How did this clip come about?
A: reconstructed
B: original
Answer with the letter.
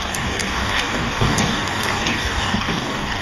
A